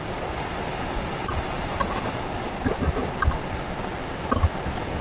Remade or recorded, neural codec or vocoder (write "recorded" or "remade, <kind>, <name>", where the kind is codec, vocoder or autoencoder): recorded